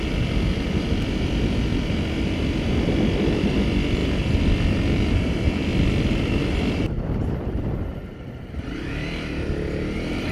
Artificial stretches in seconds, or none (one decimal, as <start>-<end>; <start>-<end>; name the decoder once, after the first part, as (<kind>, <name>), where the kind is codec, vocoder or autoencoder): 0.0-5.7 (vocoder, BigVGAN v2); 8.5-10.3